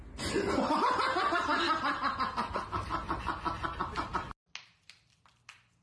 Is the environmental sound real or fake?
real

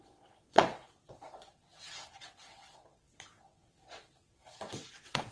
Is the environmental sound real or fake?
fake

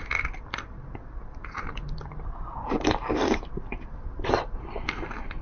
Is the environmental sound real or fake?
real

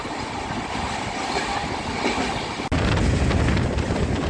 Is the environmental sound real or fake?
real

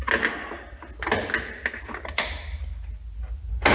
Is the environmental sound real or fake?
real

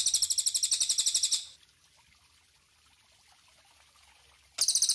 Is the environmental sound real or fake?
real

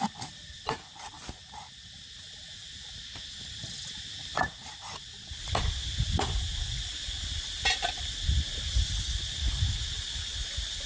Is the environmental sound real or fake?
real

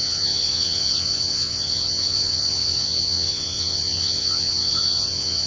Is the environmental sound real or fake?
fake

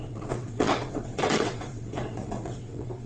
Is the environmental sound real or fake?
fake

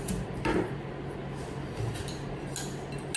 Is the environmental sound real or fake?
real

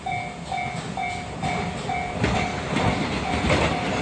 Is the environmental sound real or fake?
real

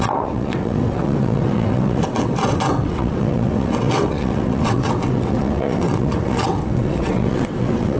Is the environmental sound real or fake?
fake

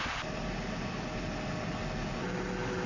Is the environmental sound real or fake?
real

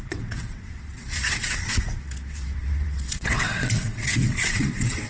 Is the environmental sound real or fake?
fake